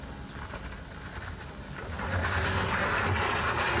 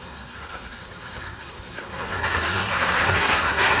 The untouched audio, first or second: first